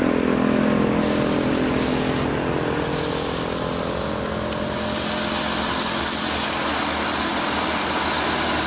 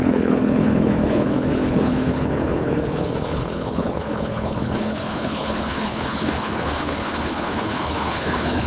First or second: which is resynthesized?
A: second